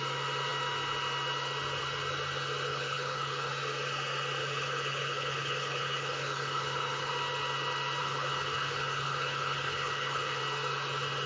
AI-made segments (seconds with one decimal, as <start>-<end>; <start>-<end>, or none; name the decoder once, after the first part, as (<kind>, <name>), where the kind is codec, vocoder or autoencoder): 2.7-3.5 (codec, HILCodec); 4.4-7.1; 8.0-10.4